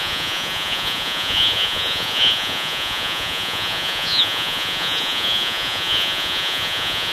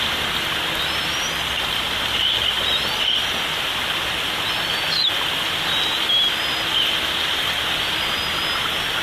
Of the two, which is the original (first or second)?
second